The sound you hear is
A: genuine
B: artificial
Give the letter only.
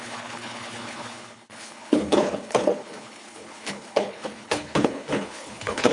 B